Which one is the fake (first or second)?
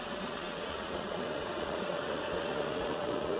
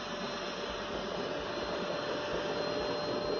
first